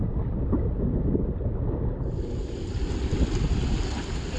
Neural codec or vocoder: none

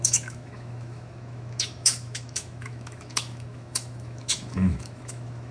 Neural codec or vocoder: autoencoder, DAC-VAE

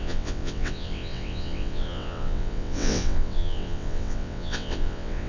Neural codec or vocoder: vocoder, WaveNeXt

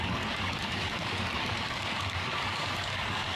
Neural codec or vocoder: codec, DAC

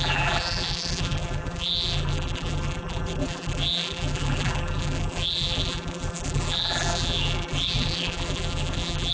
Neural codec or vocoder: vocoder, BigVGAN v2